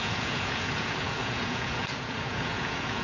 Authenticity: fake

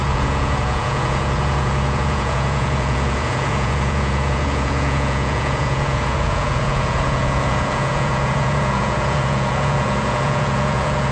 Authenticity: fake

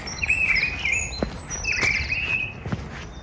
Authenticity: real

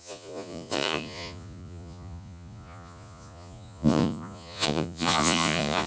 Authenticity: fake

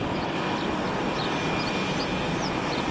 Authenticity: real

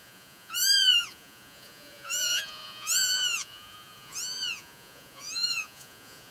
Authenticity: fake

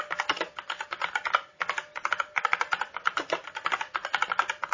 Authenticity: real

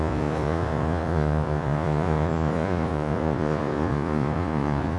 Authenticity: fake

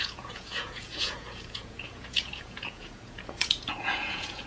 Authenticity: fake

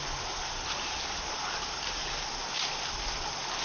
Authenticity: real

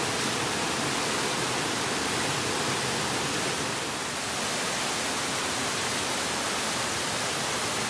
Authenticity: real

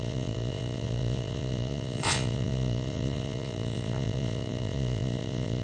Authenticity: fake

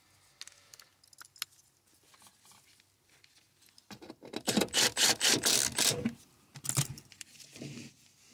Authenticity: real